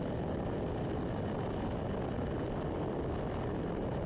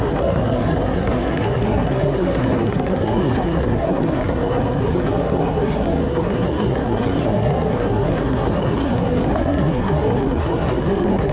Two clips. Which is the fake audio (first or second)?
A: second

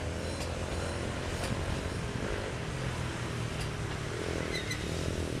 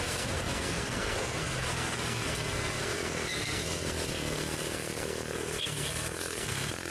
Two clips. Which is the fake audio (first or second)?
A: second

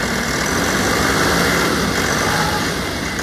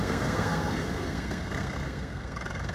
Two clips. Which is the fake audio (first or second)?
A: second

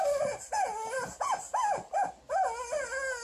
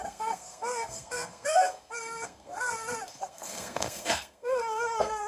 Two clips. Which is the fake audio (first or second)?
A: second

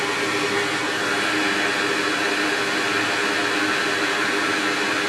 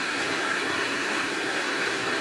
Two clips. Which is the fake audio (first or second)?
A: second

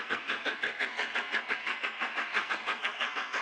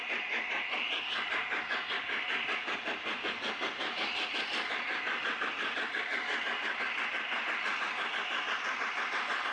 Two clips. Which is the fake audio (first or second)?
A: first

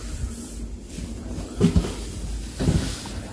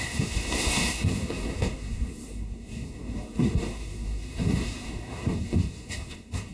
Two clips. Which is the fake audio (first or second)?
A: second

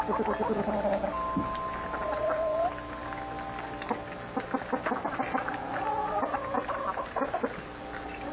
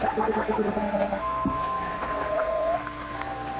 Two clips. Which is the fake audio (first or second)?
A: second